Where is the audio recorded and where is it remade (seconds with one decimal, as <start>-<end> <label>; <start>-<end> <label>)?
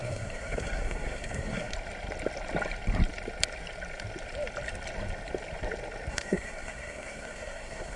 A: 0.0-1.7 remade; 1.7-6.1 recorded; 6.1-8.0 remade